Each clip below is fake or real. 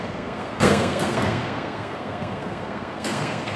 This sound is fake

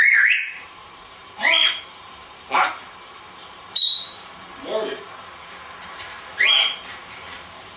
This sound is fake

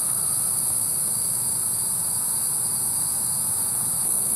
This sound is fake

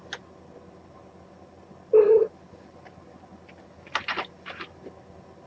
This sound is real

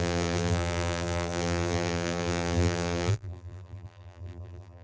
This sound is fake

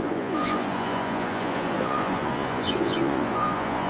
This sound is fake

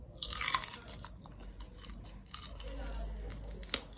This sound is real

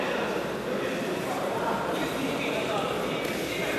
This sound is fake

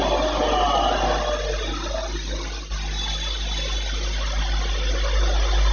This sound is real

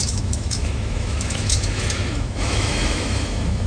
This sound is fake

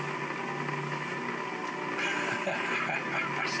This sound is real